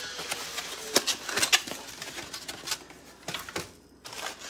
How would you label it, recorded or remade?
recorded